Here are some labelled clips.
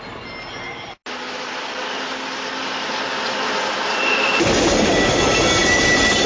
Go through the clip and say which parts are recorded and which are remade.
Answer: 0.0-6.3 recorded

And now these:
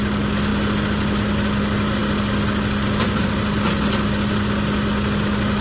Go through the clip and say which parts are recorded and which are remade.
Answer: 0.0-5.6 recorded

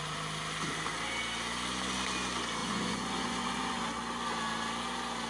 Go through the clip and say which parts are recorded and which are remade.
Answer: 0.0-2.6 recorded; 2.6-3.8 remade; 3.8-5.3 recorded

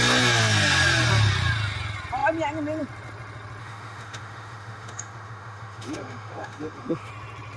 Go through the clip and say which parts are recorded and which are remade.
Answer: 0.0-3.6 recorded; 3.6-7.1 remade; 7.1-7.6 recorded

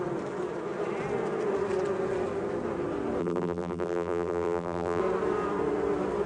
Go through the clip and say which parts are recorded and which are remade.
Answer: 0.0-3.2 recorded; 3.2-5.0 remade; 5.0-6.3 recorded

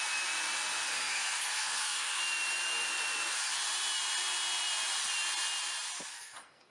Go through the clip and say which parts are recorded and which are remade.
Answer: 0.0-0.9 recorded; 0.9-2.2 remade; 2.2-6.1 recorded; 6.1-6.7 remade